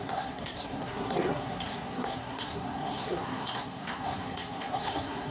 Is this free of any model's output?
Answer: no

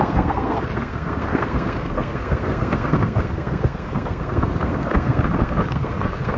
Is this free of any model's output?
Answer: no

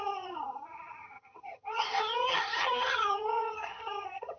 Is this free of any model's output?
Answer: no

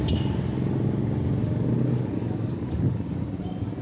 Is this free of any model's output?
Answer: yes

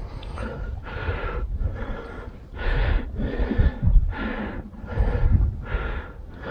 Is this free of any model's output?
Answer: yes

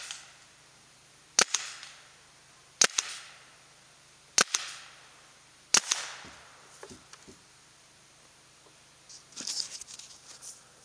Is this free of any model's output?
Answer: yes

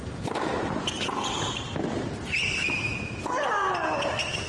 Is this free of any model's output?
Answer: yes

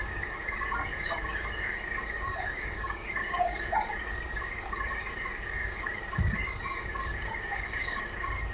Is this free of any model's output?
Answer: no